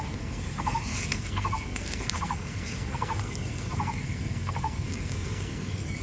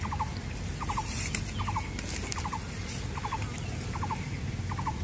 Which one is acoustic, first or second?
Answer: second